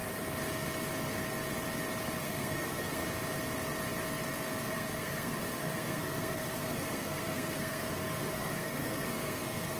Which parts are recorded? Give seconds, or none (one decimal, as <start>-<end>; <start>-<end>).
0.0-2.2; 3.0-4.7